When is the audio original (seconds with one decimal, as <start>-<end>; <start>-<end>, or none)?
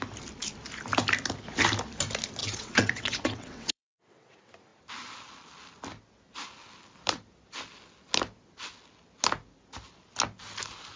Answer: 0.0-2.4; 4.3-11.0